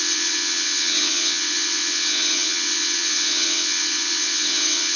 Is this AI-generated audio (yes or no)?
yes